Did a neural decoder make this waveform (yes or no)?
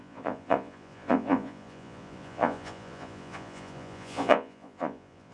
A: yes